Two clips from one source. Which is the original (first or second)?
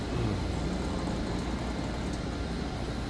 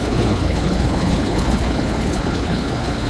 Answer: first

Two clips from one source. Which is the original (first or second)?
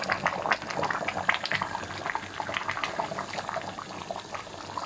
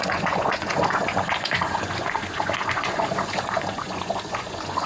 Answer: first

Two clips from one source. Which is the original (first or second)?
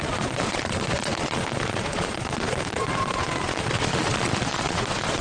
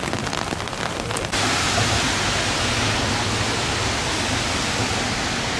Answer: second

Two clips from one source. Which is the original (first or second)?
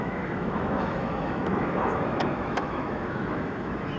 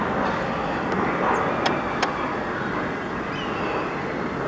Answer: second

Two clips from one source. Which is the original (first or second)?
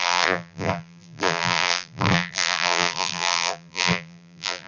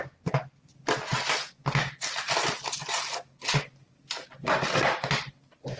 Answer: second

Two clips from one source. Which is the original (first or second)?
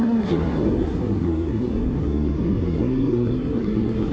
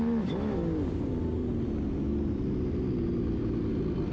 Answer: second